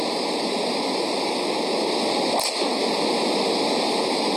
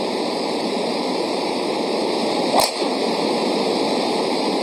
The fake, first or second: second